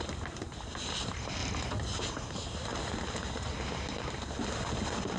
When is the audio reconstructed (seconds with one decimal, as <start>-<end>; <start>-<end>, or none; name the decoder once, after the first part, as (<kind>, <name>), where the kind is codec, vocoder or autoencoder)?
0.0-1.4 (vocoder, BigVGAN v2); 2.0-2.7; 4.0-5.2